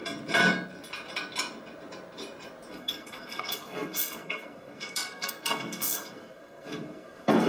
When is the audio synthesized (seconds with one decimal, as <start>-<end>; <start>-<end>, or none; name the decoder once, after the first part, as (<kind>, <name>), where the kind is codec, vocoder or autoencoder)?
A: 2.7-7.5 (codec, SNAC)